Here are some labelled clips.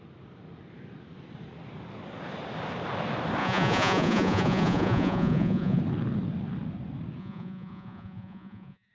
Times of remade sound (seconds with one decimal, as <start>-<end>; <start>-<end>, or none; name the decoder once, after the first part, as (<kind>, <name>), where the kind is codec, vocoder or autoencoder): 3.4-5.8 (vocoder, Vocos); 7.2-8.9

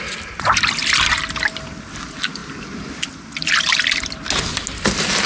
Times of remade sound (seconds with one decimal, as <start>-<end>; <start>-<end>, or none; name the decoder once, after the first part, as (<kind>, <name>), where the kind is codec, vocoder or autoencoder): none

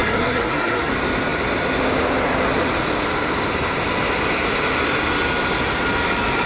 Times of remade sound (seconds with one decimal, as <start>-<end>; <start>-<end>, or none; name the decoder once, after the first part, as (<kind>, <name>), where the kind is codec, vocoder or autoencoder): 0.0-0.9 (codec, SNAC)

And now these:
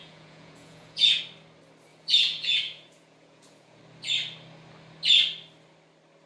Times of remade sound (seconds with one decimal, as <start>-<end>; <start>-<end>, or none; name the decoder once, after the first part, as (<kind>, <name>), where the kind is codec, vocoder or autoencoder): 0.0-1.2 (vocoder, Vocos); 1.9-3.8